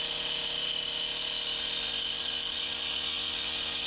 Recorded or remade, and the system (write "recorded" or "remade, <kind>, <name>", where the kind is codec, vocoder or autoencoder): recorded